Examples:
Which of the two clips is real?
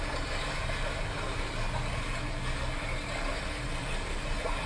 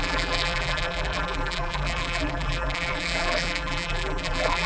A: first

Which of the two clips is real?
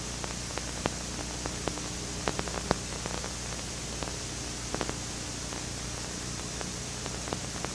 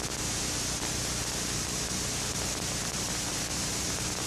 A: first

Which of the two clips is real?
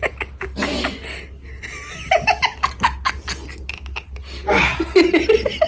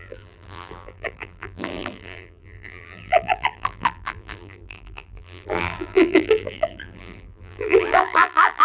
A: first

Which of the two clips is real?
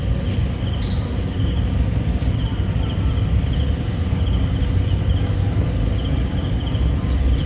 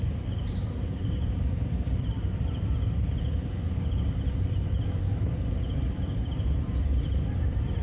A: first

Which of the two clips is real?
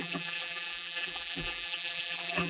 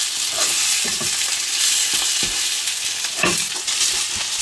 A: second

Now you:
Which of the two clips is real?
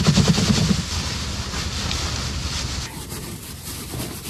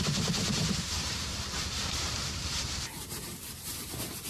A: first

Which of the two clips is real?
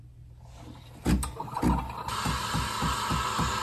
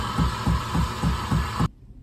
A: first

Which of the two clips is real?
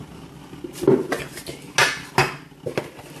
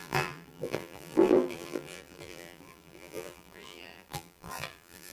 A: first